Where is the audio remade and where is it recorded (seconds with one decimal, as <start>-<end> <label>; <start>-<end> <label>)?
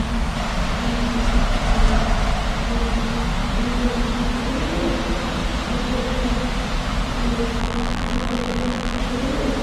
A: 0.0-7.6 recorded; 7.6-9.0 remade; 9.0-9.6 recorded